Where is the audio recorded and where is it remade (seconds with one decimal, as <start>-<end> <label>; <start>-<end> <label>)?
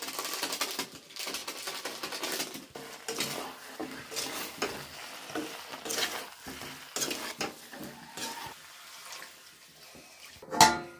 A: 0.0-11.0 recorded